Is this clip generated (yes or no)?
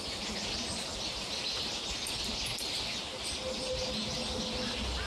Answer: yes